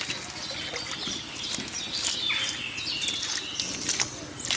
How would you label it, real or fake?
real